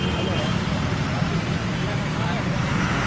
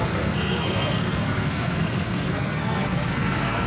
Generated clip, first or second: second